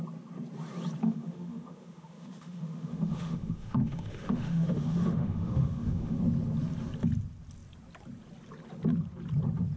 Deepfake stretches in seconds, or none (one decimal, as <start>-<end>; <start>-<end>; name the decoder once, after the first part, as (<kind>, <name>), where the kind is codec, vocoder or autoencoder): 1.0-6.2 (autoencoder, DAC-VAE)